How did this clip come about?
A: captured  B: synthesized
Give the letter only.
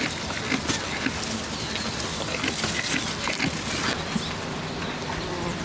A